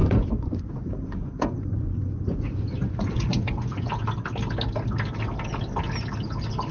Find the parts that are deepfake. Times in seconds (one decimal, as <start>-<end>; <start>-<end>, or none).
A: 0.0-3.9

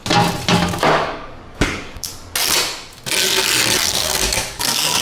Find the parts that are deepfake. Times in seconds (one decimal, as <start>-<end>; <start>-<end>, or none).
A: 0.5-2.1; 3.9-5.0

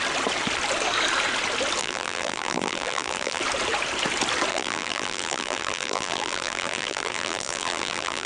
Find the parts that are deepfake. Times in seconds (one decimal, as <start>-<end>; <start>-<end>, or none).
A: 1.8-3.4; 4.5-8.3

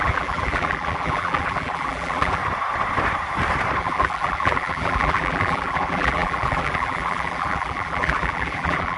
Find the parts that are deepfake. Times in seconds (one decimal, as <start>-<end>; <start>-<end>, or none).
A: 0.0-2.4; 3.8-9.0

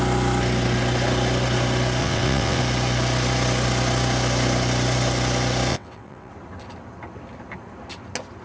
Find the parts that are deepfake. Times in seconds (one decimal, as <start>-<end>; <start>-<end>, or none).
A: 2.0-2.6; 5.7-6.3

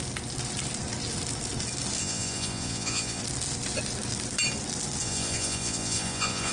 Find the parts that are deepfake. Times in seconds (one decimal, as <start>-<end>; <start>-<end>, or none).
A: 2.0-3.2; 5.0-6.5

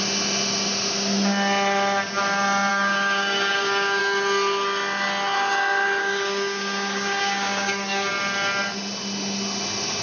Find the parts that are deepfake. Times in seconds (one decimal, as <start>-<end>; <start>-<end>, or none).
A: 2.7-4.0; 6.0-8.1